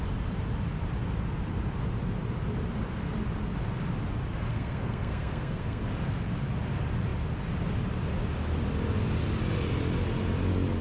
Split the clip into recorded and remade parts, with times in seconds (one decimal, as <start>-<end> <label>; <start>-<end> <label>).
0.0-4.5 recorded; 4.5-5.8 remade; 5.8-10.8 recorded